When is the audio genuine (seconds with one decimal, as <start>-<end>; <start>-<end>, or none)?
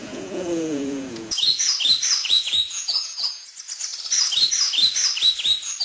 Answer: 1.7-2.2; 3.5-5.8